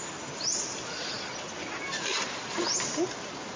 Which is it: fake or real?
real